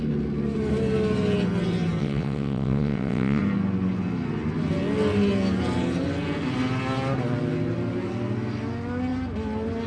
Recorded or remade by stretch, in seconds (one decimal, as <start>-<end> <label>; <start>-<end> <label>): 0.0-2.0 recorded; 2.0-3.4 remade; 3.4-9.9 recorded